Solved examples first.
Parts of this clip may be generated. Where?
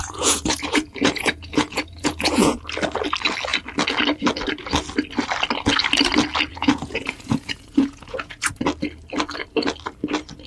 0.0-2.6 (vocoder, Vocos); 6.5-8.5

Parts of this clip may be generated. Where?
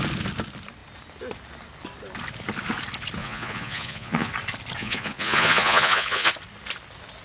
3.2-4.3 (vocoder, Vocos); 4.8-6.3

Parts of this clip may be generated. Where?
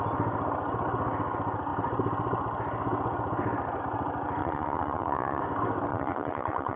4.4-5.4 (vocoder, Vocos); 5.9-6.8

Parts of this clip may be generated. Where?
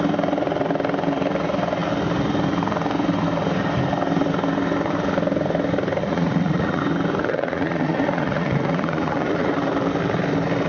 6.0-6.8 (vocoder, Vocos); 7.2-9.5